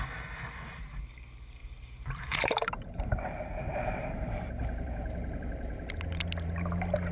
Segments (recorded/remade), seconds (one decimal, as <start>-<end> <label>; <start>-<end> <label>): 0.0-1.6 recorded; 1.6-5.9 remade; 5.9-7.1 recorded

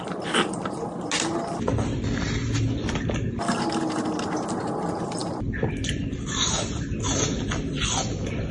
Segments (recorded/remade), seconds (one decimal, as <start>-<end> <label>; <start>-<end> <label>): 0.0-8.5 recorded

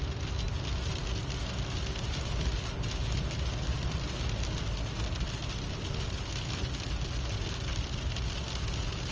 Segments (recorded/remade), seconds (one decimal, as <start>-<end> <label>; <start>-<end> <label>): 0.0-9.1 recorded